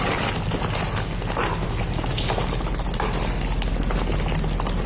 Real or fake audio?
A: real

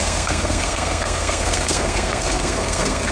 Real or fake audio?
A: fake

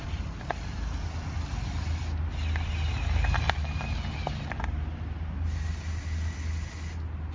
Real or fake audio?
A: real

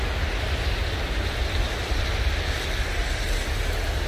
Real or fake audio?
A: real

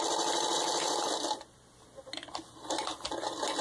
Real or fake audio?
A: real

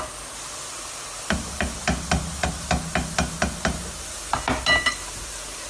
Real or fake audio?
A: real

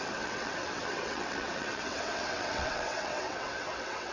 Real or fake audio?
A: fake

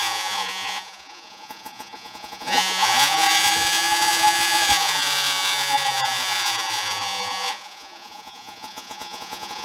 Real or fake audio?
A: fake